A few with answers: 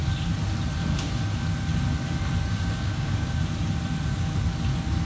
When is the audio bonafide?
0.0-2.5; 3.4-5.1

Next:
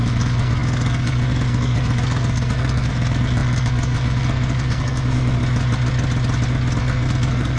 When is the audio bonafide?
5.4-6.8